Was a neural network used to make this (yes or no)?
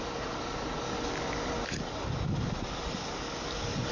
no